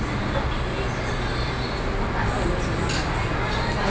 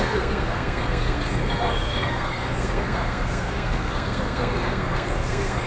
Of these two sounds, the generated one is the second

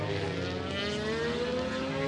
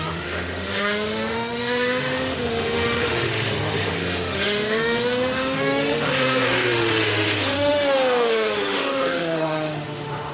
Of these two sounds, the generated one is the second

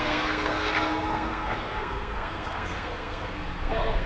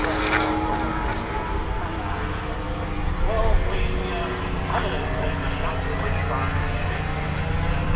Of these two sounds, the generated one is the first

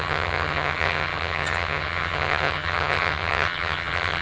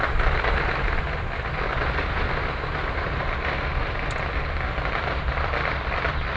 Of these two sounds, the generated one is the first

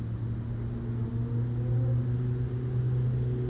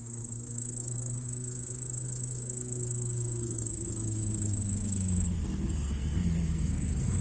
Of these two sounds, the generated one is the second